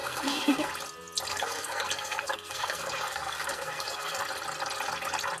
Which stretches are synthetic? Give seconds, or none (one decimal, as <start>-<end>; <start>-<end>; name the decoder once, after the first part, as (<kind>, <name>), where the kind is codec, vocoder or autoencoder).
0.0-0.7 (codec, SNAC); 1.3-4.2